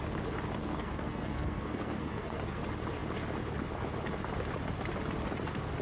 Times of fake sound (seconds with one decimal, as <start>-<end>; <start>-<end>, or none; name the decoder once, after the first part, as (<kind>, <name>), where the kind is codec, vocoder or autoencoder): 0.6-2.6 (codec, SNAC)